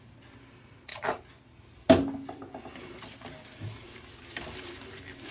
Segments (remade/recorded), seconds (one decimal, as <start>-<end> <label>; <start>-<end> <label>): 0.0-5.3 recorded

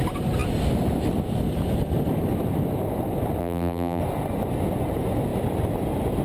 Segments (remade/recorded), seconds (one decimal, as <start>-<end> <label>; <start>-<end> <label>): 0.0-3.4 recorded; 3.4-4.0 remade; 4.0-6.2 recorded